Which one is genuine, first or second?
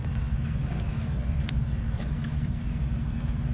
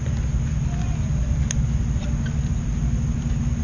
second